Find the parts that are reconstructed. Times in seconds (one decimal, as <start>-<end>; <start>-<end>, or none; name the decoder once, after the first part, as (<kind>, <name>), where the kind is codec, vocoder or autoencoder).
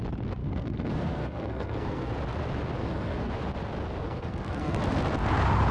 0.4-2.1 (codec, SNAC); 2.8-3.3; 4.0-4.8